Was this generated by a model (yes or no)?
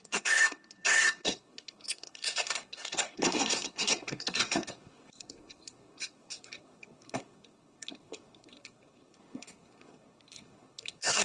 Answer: yes